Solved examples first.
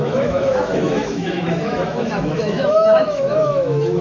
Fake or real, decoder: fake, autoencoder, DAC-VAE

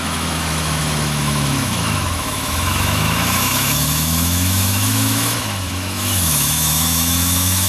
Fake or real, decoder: fake, autoencoder, DAC-VAE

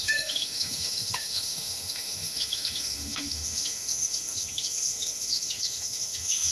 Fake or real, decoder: fake, autoencoder, DAC-VAE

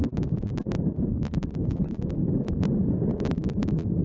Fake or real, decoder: real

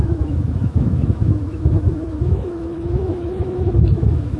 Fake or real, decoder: fake, autoencoder, DAC-VAE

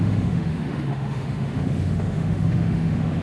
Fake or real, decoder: fake, autoencoder, DAC-VAE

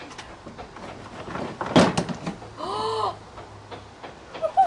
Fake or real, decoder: real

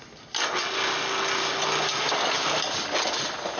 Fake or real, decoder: real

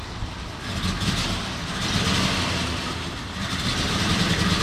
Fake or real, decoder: real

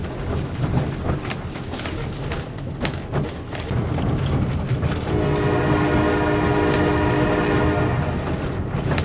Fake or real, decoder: real